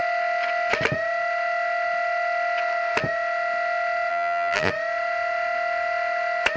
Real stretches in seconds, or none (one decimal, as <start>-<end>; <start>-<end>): 0.0-4.1; 4.7-6.6